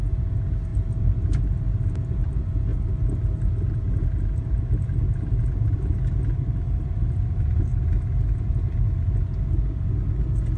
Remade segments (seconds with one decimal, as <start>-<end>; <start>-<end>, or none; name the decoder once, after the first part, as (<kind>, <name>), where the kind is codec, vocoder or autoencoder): none